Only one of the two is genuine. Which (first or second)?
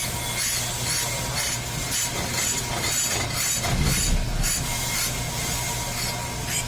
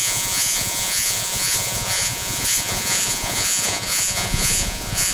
first